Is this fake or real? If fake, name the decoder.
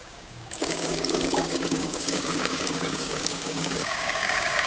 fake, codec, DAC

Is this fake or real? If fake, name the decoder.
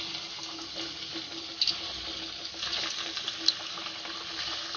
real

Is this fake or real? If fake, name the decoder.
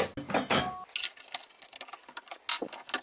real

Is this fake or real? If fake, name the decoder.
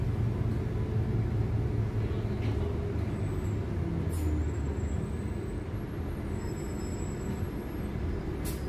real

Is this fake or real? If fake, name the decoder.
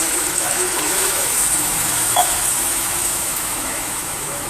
fake, autoencoder, DAC-VAE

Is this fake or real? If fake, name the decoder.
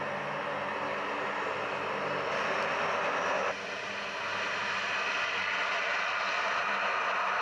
real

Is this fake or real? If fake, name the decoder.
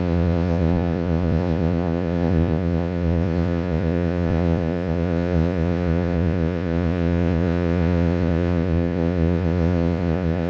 fake, vocoder, Vocos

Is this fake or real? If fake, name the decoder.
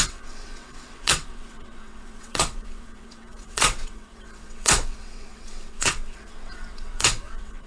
fake, vocoder, WaveNeXt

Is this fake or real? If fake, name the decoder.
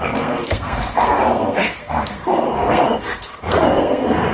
fake, codec, SNAC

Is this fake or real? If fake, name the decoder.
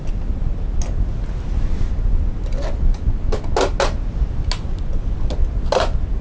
real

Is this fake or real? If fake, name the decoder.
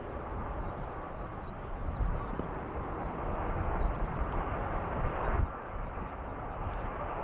real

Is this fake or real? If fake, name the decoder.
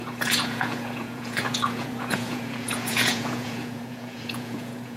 fake, vocoder, Vocos